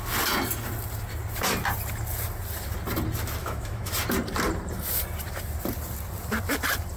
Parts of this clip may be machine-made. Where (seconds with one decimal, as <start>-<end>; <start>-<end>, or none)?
3.4-3.9